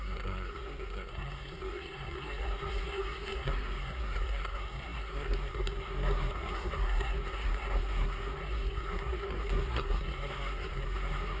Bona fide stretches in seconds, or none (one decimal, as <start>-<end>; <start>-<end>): none